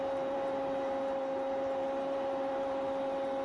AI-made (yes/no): yes